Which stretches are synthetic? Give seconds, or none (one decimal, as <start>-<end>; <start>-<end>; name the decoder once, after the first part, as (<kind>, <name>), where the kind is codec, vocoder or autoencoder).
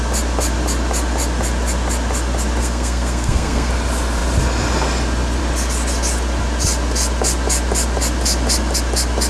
2.6-3.7 (codec, SNAC)